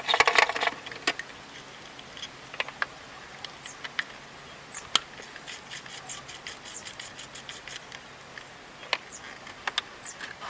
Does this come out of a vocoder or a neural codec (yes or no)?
no